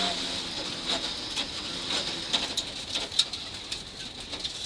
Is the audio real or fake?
real